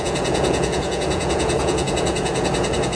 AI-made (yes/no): yes